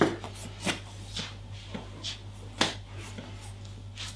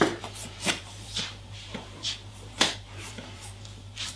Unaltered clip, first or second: first